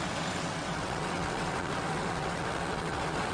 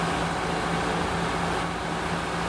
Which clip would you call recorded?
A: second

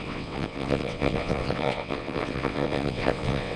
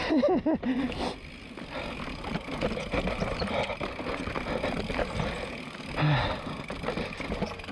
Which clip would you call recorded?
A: second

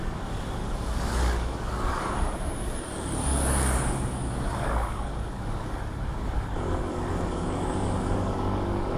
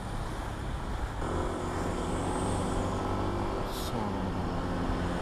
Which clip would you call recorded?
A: second